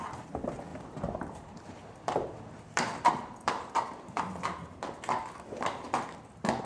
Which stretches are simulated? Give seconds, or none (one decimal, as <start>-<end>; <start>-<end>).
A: 0.7-4.2